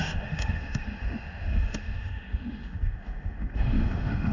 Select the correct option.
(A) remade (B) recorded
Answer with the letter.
A